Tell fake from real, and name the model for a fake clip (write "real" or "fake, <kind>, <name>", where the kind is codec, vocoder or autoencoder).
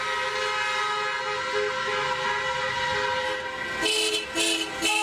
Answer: real